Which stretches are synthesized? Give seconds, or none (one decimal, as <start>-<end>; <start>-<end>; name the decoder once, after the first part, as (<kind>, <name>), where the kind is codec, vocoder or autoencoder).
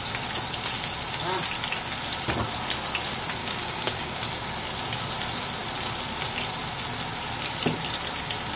3.4-4.2 (codec, DAC)